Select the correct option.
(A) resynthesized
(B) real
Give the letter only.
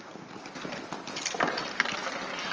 B